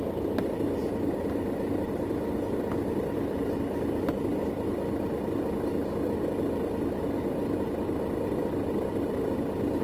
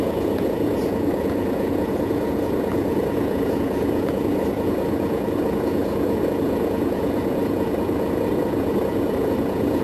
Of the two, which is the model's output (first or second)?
second